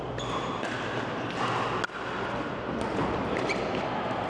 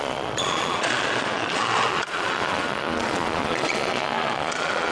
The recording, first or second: first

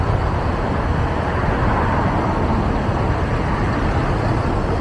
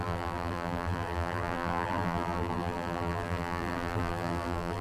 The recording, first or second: first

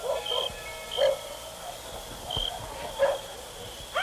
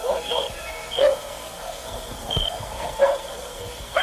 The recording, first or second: first